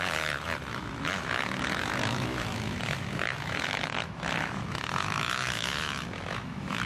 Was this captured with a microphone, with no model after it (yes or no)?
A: no